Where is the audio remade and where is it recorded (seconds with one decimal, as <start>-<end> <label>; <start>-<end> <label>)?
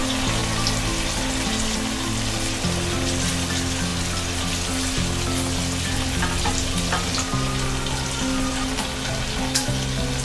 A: 0.0-10.2 recorded